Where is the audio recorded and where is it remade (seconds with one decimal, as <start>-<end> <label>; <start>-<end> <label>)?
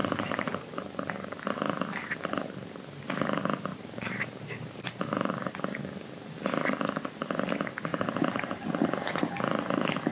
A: 0.0-1.4 remade; 1.4-3.7 recorded; 3.7-5.3 remade; 5.3-7.9 recorded; 7.9-8.8 remade; 8.8-10.1 recorded